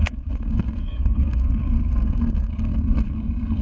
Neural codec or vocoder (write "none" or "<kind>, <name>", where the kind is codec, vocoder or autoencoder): codec, SNAC